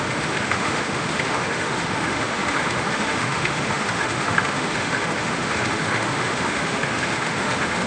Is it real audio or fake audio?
fake